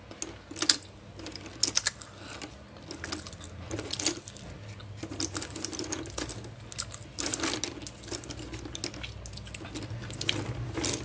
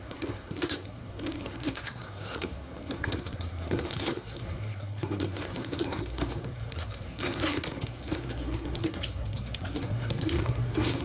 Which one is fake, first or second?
second